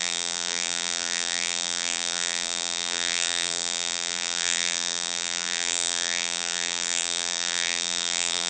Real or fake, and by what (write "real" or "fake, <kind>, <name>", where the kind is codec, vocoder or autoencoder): fake, vocoder, BigVGAN v2